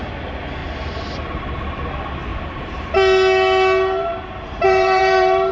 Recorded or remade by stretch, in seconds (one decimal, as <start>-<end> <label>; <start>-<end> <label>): 0.0-0.6 recorded; 0.6-1.9 remade; 1.9-2.3 recorded; 2.3-2.9 remade; 2.9-4.0 recorded; 4.0-5.5 remade